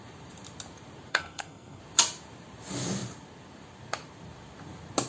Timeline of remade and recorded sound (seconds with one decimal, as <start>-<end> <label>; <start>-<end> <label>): 0.0-1.1 recorded; 1.1-1.8 remade; 1.8-5.1 recorded

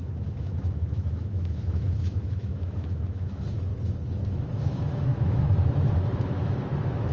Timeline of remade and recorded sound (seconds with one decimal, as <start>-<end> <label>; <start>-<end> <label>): 0.0-7.1 remade

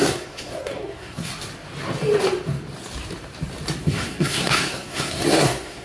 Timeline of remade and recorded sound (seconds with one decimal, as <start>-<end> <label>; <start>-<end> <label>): 0.0-1.3 remade; 1.3-3.8 recorded; 3.8-5.8 remade

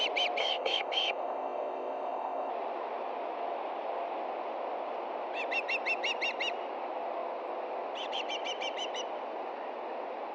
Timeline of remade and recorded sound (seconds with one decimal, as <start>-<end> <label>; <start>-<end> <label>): 0.0-0.4 recorded; 0.4-2.5 remade; 2.5-10.3 recorded

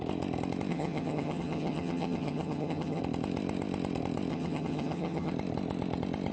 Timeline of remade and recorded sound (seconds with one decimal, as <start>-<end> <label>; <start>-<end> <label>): 0.0-0.7 recorded; 0.7-3.0 remade; 3.0-4.3 recorded; 4.3-5.3 remade; 5.3-6.3 recorded

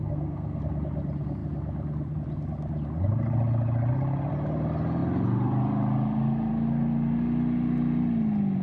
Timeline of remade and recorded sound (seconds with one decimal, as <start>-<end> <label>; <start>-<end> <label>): 0.0-0.6 remade; 0.6-8.6 recorded